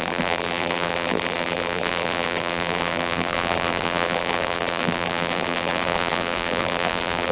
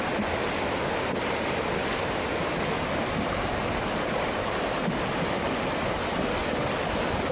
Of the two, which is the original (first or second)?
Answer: second